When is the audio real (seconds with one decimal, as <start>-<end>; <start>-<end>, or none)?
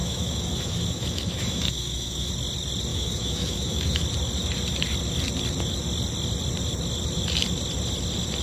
2.3-2.9; 4.0-8.4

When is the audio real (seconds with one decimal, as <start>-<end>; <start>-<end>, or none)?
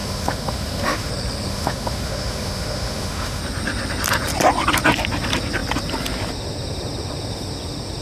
1.1-1.5; 3.4-8.0